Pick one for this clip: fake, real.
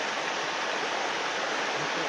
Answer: real